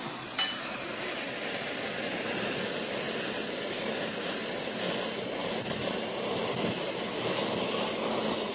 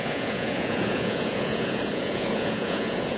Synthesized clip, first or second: second